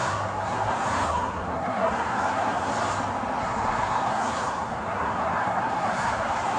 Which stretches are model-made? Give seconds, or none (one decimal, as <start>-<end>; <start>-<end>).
0.0-2.7; 3.4-6.6